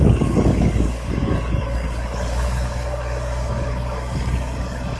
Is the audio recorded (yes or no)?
no